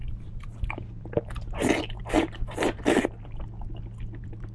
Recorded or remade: recorded